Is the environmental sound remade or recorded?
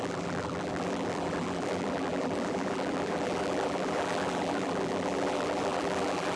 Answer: remade